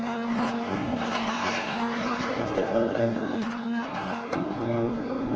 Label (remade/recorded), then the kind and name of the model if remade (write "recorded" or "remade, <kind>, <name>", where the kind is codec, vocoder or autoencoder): remade, codec, SNAC